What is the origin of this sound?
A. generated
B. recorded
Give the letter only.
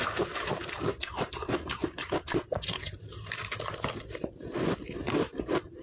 A